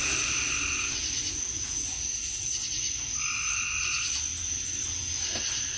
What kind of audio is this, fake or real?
real